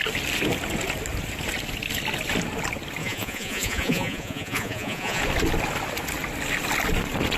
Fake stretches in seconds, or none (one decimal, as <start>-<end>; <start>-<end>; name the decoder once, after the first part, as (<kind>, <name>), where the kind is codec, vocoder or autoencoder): 3.0-5.2 (vocoder, Vocos)